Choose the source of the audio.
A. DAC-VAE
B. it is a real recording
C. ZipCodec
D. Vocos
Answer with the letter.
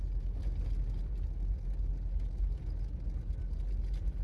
B